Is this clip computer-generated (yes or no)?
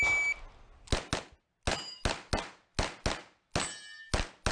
no